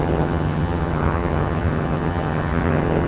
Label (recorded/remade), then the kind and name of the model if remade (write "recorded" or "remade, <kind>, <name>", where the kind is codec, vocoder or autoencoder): remade, vocoder, HiFi-GAN